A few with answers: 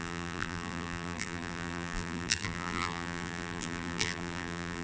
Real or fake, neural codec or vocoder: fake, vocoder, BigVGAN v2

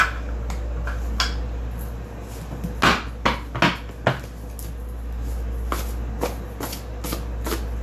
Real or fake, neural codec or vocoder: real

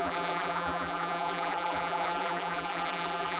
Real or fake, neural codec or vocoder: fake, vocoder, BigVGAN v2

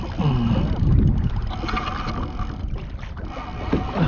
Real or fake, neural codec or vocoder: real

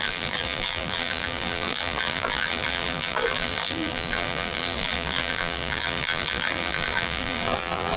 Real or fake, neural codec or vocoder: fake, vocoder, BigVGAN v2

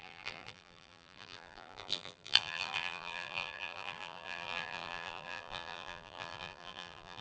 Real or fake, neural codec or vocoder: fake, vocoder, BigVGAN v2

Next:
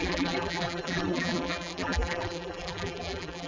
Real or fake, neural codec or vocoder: fake, vocoder, BigVGAN v2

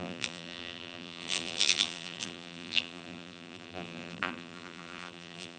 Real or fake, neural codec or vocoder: fake, vocoder, BigVGAN v2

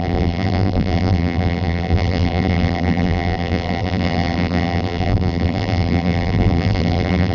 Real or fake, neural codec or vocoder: fake, vocoder, BigVGAN v2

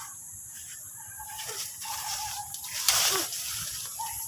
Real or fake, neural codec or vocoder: fake, vocoder, BigVGAN v2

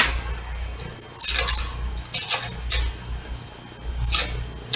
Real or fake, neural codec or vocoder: real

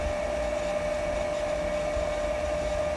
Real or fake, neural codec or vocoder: real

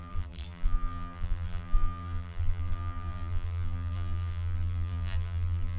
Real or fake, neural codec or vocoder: fake, vocoder, BigVGAN v2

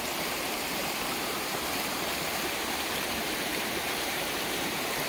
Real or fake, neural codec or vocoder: fake, vocoder, BigVGAN v2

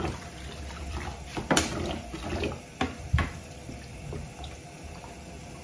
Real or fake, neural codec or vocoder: fake, vocoder, BigVGAN v2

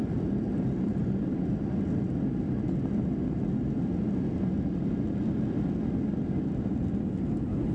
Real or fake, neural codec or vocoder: real